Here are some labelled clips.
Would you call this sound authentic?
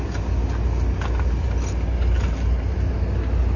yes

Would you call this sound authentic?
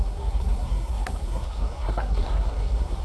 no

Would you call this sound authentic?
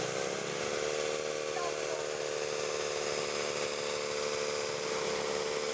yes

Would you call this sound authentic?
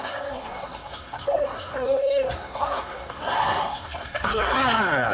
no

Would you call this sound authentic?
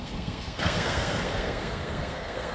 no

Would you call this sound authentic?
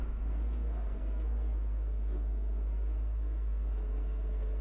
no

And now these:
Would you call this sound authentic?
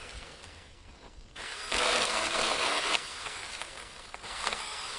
no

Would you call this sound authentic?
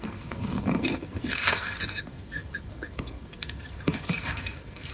no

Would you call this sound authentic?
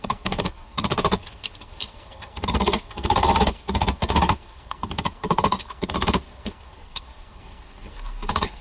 no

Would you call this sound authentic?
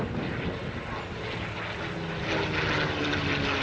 yes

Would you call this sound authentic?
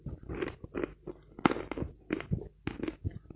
yes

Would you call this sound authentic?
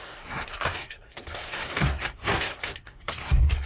no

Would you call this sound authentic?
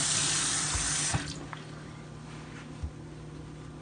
yes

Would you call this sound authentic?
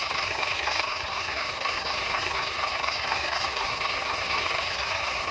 no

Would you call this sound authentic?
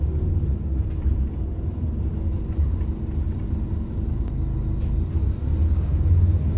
yes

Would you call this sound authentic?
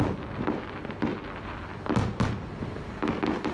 yes